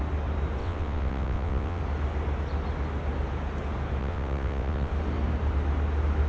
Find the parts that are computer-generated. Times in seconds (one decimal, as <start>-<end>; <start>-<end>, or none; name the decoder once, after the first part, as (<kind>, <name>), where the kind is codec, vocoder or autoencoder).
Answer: 0.6-1.8 (vocoder, WaveNeXt); 4.0-4.9